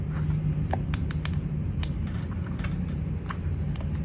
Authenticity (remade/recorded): recorded